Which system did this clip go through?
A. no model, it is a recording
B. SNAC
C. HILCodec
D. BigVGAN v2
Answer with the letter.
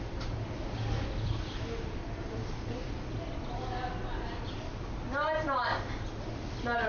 A